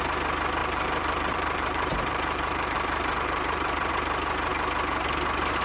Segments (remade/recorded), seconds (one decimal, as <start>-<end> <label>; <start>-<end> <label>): 0.0-0.6 recorded; 0.6-3.9 remade; 3.9-5.6 recorded